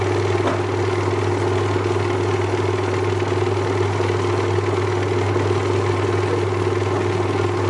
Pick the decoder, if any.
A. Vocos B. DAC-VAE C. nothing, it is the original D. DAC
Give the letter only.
C